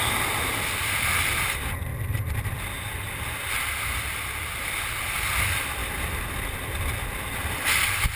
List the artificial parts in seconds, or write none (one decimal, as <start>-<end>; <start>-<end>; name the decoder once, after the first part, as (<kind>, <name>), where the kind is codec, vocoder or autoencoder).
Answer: none